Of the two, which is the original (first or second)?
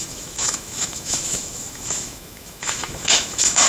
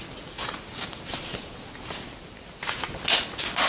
second